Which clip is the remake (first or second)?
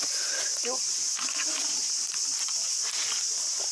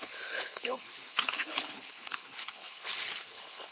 second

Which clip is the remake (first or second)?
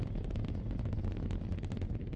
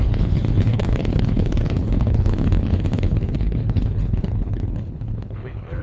second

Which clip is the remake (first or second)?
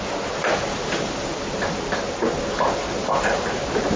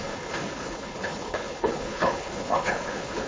second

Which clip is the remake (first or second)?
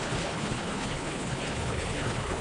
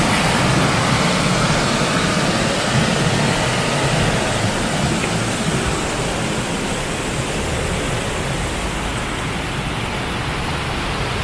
first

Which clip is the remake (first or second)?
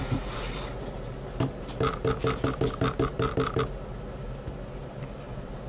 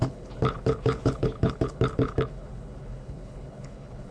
second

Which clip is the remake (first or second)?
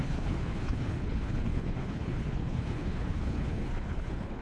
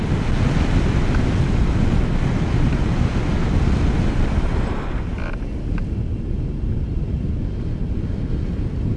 first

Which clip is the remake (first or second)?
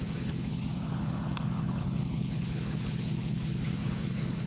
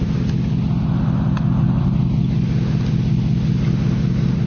first